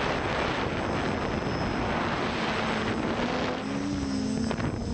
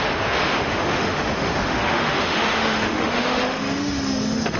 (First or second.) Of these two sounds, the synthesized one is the second